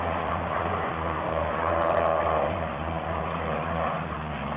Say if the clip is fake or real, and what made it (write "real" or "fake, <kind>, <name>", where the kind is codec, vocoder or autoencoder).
fake, vocoder, Vocos